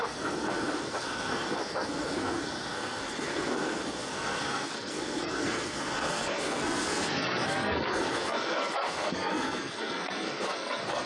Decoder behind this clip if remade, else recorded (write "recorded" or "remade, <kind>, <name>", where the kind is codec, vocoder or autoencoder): remade, codec, SNAC